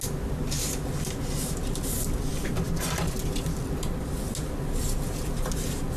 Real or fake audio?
real